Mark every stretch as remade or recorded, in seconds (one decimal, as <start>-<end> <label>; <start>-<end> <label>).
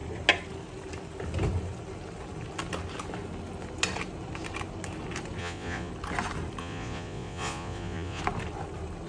0.0-5.4 recorded; 5.4-5.9 remade; 5.9-6.6 recorded; 6.6-8.2 remade; 8.2-9.1 recorded